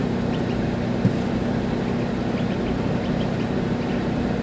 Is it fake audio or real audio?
real